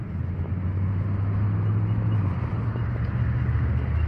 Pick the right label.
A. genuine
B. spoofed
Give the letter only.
A